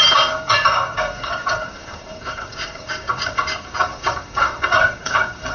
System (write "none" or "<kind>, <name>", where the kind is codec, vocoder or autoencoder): codec, DAC